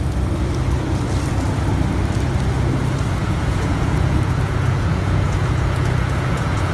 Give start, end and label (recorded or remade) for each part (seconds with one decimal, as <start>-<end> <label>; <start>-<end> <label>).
0.0-3.2 recorded; 3.2-6.7 remade